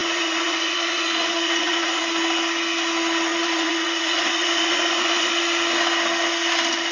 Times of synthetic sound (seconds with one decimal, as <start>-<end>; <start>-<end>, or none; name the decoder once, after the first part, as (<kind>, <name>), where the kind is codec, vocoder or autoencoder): 0.0-2.0 (vocoder, Vocos); 3.3-5.3